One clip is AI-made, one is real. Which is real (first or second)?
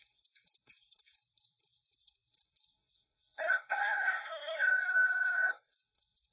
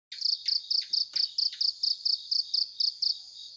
second